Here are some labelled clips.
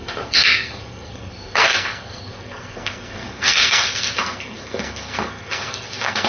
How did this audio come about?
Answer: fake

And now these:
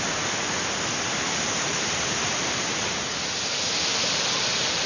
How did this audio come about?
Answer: real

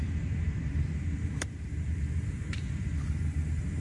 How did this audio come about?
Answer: fake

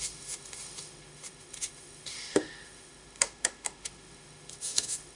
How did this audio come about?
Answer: fake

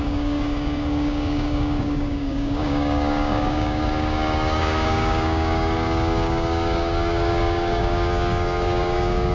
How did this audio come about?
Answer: fake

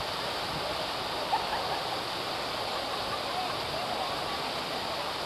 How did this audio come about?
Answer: real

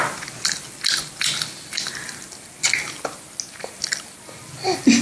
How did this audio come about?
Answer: real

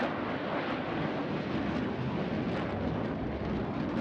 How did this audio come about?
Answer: real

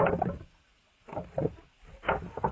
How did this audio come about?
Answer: real